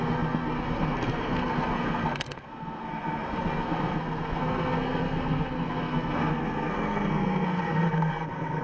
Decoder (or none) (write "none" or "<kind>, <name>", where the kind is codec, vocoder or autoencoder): codec, SNAC